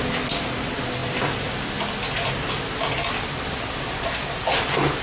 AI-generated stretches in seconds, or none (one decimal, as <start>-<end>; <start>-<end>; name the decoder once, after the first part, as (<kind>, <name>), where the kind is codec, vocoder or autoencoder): none